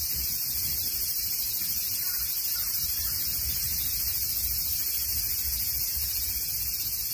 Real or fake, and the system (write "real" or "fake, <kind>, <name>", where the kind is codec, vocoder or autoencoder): real